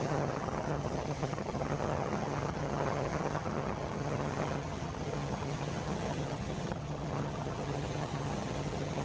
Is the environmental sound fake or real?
fake